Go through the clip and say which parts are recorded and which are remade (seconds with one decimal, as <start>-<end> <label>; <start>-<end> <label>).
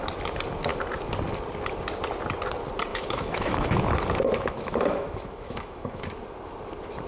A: 0.0-2.9 recorded; 2.9-3.8 remade; 3.8-4.3 recorded; 4.3-6.1 remade; 6.1-7.1 recorded